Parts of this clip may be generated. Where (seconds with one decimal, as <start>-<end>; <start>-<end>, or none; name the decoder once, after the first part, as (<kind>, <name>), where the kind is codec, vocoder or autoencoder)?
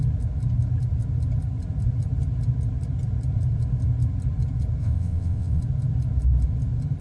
4.8-5.6 (vocoder, WaveNeXt)